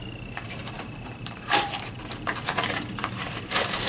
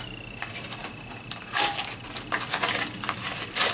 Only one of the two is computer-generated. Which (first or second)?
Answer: first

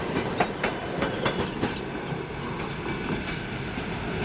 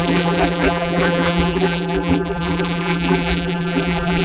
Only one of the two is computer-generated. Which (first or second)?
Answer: second